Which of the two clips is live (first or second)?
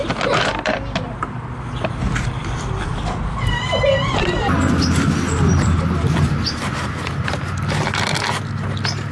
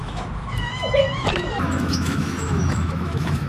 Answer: first